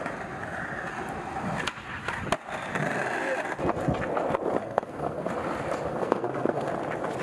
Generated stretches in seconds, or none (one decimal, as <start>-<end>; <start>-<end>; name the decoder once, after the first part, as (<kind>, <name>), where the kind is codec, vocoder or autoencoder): 4.6-5.3 (codec, SNAC); 5.9-6.7